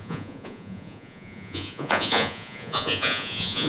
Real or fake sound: fake